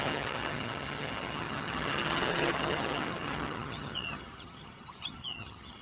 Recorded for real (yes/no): no